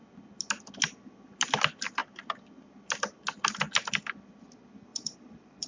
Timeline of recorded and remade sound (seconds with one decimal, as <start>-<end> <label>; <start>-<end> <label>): 0.0-4.9 recorded; 4.9-5.7 remade

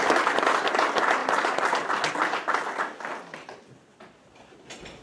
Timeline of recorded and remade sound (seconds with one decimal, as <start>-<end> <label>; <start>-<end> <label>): 0.0-5.0 recorded

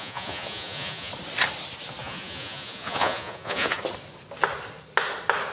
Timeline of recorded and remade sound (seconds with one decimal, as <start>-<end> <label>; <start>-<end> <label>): 0.0-1.1 remade; 1.1-2.0 recorded; 2.0-3.8 remade; 3.8-5.5 recorded

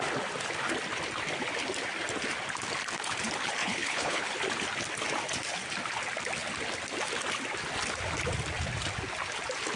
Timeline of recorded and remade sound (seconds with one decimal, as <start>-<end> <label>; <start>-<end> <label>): 0.0-3.6 recorded; 3.6-4.3 remade; 4.3-9.8 recorded

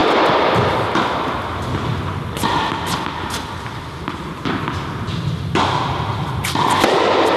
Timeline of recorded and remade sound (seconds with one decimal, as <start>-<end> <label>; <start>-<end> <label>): 0.0-7.4 recorded

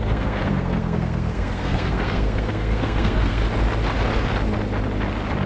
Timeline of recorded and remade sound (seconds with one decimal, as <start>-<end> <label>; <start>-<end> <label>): 0.0-3.4 remade; 3.4-5.5 recorded